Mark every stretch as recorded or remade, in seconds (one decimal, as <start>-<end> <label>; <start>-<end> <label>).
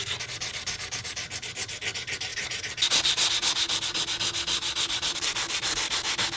0.0-2.3 recorded; 2.3-3.3 remade; 3.3-6.4 recorded